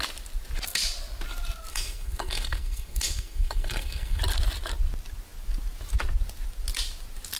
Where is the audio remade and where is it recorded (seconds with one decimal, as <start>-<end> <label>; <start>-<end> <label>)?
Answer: 0.0-1.7 recorded; 1.7-4.2 remade; 4.2-7.4 recorded